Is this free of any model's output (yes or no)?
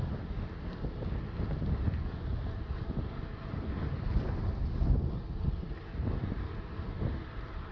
yes